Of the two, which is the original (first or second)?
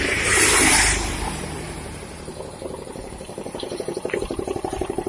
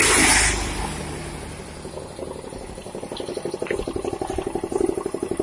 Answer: second